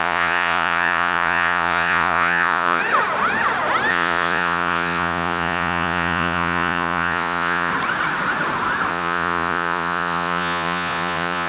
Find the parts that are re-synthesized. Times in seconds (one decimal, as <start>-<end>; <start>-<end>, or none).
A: 0.0-2.8; 3.9-7.7; 8.9-11.5